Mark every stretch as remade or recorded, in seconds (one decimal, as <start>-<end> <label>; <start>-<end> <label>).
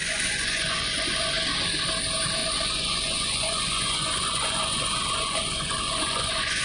0.0-1.3 remade; 1.3-2.4 recorded; 2.4-6.6 remade